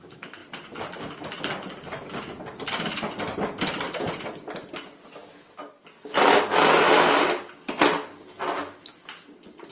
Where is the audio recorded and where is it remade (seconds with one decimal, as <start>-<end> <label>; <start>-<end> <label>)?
0.0-0.4 recorded; 0.4-1.0 remade; 1.0-9.7 recorded